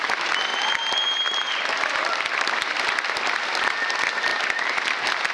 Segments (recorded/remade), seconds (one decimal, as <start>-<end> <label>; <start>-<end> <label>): 0.0-5.3 recorded

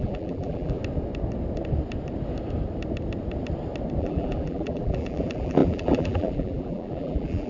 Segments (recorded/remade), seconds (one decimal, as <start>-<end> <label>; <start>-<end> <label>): 0.0-0.8 remade; 0.8-4.0 recorded; 4.0-7.5 remade

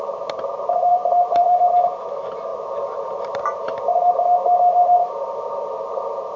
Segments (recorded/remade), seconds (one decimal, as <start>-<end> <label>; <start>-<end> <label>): 0.0-0.9 recorded; 0.9-1.6 remade; 1.6-6.4 recorded

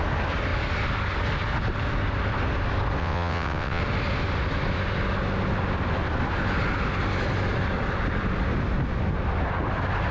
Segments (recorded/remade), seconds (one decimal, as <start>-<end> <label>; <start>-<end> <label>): 0.0-3.0 recorded; 3.0-3.8 remade; 3.8-10.1 recorded

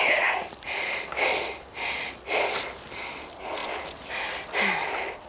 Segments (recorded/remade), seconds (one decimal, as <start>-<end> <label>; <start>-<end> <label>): 0.0-3.6 recorded; 3.6-4.1 remade; 4.1-5.3 recorded

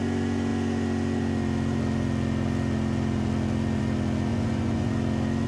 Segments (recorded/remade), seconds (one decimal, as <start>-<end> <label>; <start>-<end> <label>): 0.0-4.3 recorded; 4.3-4.9 remade; 4.9-5.5 recorded